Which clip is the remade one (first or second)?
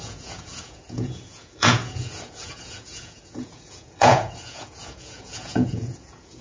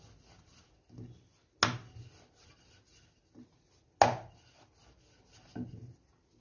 first